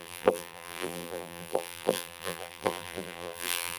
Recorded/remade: remade